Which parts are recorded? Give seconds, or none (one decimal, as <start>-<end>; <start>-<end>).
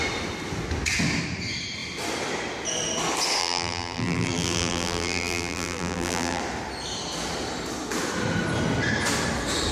0.0-3.4; 6.4-9.7